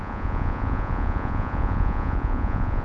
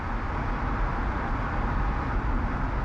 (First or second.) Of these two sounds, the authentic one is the second